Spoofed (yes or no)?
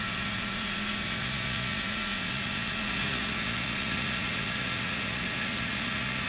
yes